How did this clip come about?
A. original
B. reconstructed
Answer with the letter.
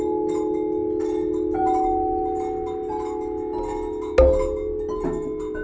A